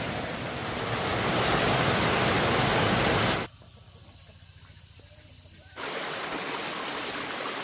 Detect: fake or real real